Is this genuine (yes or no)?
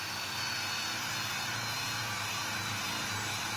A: yes